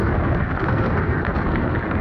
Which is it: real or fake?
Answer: fake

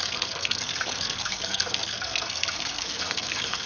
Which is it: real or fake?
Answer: fake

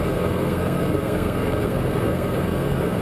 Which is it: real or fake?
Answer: fake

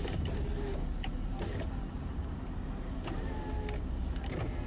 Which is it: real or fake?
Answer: real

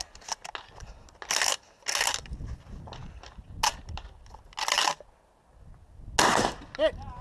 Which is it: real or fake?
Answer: real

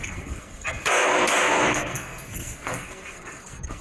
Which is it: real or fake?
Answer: fake